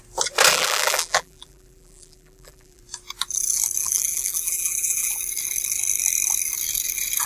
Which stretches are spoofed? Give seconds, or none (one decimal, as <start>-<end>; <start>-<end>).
0.5-2.8; 3.8-5.2